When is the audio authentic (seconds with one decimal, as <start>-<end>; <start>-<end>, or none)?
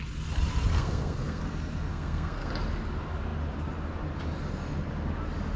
0.0-0.7; 1.4-1.9; 2.5-5.6